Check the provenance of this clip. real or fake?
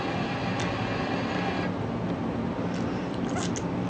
real